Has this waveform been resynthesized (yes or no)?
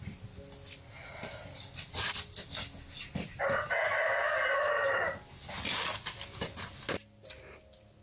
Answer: no